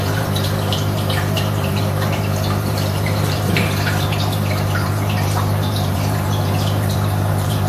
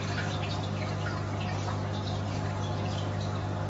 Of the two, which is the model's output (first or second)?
first